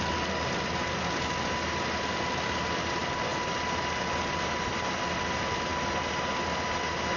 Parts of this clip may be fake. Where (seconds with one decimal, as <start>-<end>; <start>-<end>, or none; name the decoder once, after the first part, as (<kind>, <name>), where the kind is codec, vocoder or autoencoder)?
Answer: none

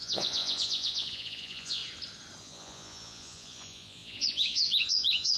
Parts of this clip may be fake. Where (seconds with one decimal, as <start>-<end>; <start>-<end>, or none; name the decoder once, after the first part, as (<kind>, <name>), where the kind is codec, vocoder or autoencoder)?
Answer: 0.0-1.8 (vocoder, Vocos); 2.4-5.4

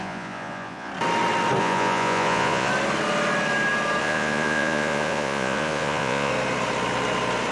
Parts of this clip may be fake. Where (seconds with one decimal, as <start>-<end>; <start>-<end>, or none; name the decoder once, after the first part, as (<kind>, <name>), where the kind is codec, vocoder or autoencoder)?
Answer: 0.0-0.9 (vocoder, Vocos); 1.6-2.7; 4.0-6.3

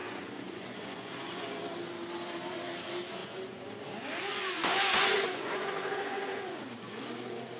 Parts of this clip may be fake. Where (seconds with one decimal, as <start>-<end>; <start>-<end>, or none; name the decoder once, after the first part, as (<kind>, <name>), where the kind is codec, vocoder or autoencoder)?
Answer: 0.0-1.6 (vocoder, Vocos); 3.2-3.7; 4.3-7.0

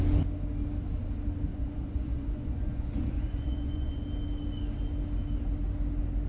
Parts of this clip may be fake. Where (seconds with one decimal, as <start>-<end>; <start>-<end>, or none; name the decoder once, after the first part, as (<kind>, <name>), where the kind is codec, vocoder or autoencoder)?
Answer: 1.5-4.0 (vocoder, Vocos)